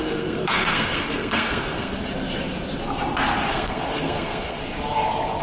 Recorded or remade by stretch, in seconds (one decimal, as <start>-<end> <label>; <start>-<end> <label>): 0.0-1.9 remade; 1.9-3.5 recorded; 3.5-4.6 remade; 4.6-5.4 recorded

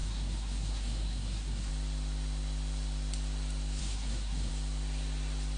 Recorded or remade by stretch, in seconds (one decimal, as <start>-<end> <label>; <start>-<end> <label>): 0.0-1.7 remade; 1.7-3.8 recorded; 3.8-4.5 remade; 4.5-5.6 recorded

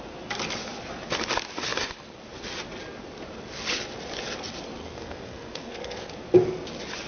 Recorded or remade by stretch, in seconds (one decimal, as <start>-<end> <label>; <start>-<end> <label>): 0.0-4.8 recorded; 4.8-6.1 remade; 6.1-7.1 recorded

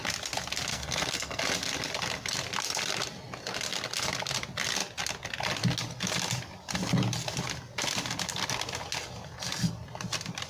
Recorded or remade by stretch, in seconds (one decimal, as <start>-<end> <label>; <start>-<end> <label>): 0.0-0.7 recorded; 0.7-1.4 remade; 1.4-10.5 recorded

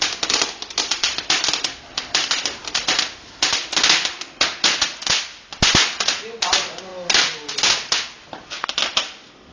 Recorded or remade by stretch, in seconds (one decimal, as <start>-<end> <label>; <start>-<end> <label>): 0.0-9.5 recorded